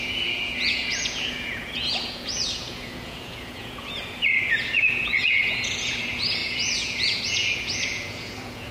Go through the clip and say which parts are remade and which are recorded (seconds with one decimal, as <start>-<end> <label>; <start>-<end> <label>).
0.0-8.7 remade